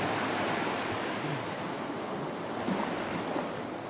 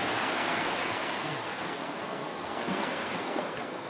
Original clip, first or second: first